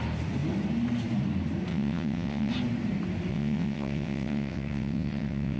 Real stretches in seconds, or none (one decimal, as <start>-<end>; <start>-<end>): 0.0-1.7; 2.5-3.3